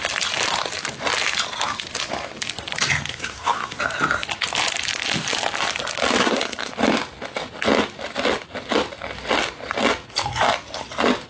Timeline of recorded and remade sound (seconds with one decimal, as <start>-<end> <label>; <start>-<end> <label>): 0.0-3.1 recorded; 3.1-3.8 remade; 3.8-6.2 recorded; 6.2-6.7 remade; 6.7-11.3 recorded